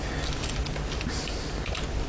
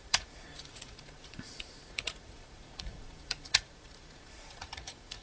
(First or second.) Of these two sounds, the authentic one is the first